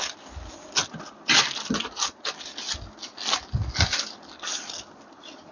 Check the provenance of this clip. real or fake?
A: real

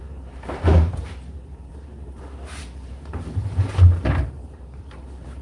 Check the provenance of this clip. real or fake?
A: fake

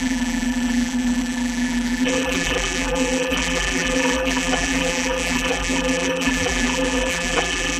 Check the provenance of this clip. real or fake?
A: fake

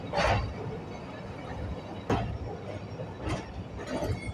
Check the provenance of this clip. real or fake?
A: real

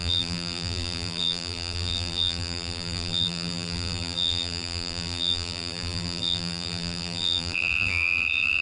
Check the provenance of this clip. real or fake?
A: fake